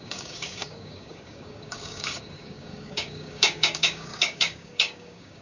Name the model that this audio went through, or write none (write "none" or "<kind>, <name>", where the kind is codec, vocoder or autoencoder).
codec, DAC